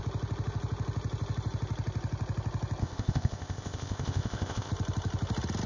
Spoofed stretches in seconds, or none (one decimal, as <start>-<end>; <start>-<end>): 2.8-4.7